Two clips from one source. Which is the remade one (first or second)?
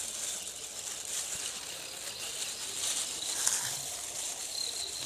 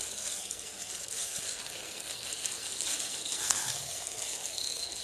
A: second